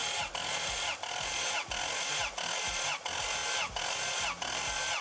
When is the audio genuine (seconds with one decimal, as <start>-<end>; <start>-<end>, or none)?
0.0-5.0